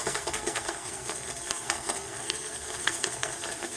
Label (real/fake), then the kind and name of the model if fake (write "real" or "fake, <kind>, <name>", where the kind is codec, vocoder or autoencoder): fake, codec, SNAC